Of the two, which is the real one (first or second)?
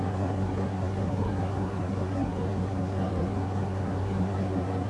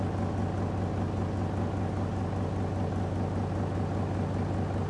second